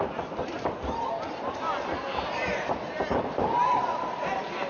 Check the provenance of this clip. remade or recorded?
recorded